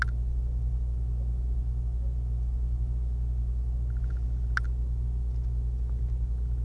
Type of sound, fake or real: real